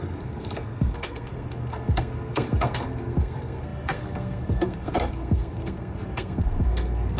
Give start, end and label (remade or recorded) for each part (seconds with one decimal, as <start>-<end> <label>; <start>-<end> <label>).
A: 0.0-7.2 remade

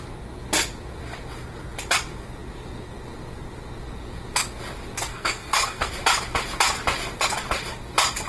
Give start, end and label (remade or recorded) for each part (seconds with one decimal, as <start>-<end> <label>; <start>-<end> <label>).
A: 0.0-5.1 recorded; 5.1-5.9 remade; 5.9-8.3 recorded

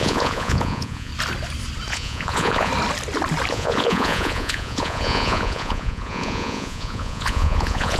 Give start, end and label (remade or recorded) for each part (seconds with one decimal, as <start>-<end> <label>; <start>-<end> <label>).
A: 0.0-1.1 remade; 1.1-1.9 recorded; 1.9-2.7 remade; 2.7-3.5 recorded; 3.5-8.0 remade

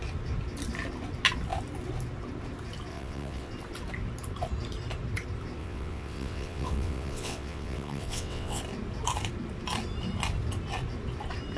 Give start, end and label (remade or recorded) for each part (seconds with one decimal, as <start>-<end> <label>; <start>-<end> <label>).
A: 0.0-2.9 recorded; 2.9-3.5 remade; 3.5-5.6 recorded; 5.6-8.6 remade; 8.6-11.6 recorded

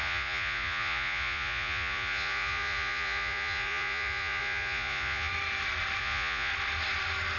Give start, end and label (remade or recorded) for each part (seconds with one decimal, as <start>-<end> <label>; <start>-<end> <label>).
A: 0.0-5.3 remade; 5.3-6.0 recorded; 6.0-6.5 remade; 6.5-7.4 recorded

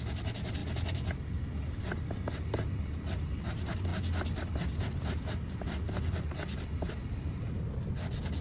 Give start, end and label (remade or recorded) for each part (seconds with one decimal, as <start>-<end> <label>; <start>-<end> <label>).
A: 0.0-8.4 recorded

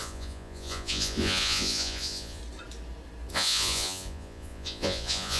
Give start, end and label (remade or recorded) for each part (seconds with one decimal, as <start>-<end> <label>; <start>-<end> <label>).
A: 0.0-2.4 remade; 2.4-3.3 recorded; 3.3-5.4 remade

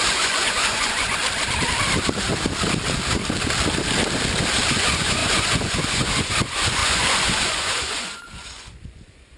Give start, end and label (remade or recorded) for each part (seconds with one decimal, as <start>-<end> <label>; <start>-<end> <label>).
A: 0.0-1.2 remade; 1.2-4.7 recorded; 4.7-9.4 remade